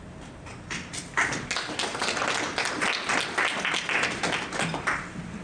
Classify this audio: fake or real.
real